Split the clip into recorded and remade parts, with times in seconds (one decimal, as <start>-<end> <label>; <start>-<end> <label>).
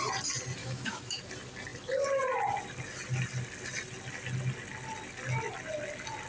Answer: 0.0-0.6 recorded; 0.6-1.2 remade; 1.2-6.3 recorded